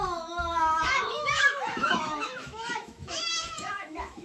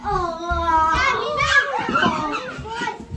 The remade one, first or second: first